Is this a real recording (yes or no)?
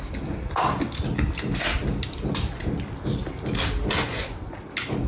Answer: yes